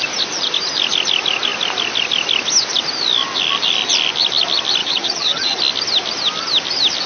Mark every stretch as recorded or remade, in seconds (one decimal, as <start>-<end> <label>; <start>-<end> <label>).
0.0-4.8 recorded; 4.8-5.6 remade; 5.6-7.1 recorded